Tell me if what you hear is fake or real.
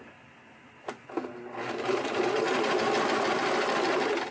real